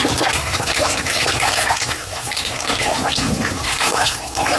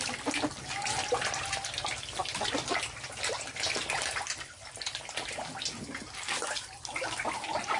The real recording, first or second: second